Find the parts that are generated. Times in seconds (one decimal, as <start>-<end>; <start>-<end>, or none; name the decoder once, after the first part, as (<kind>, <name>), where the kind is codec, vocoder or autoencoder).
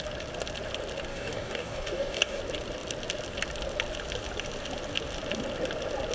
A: 1.1-2.4 (codec, DAC)